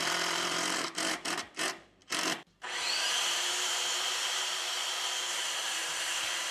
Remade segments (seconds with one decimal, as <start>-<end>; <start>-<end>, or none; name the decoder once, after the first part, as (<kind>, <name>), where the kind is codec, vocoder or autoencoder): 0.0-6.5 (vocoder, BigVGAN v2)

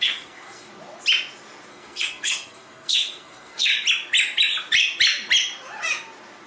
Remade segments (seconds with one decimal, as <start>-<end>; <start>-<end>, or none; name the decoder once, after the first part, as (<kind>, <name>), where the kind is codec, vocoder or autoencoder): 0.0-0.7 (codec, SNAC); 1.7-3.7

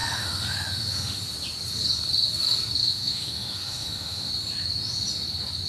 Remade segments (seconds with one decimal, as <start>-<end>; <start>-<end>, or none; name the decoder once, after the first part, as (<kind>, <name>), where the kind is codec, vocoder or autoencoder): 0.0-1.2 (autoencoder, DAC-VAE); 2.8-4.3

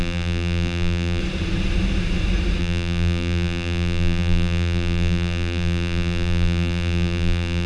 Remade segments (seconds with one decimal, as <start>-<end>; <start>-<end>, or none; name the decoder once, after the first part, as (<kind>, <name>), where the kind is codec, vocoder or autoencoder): 0.0-1.2 (vocoder, BigVGAN v2); 2.6-7.7